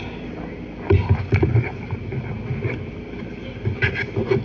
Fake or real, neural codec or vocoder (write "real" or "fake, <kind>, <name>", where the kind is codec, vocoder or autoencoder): real